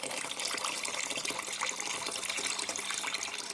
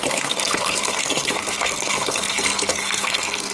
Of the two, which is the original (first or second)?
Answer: first